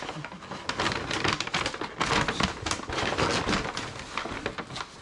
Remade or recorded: recorded